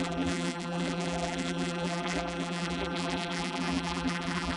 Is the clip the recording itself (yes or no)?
no